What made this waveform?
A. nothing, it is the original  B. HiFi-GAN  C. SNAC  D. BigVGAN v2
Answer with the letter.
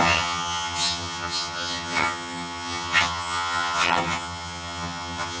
B